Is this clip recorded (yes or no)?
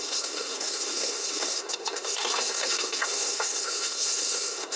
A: no